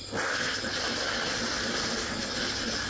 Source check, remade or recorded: recorded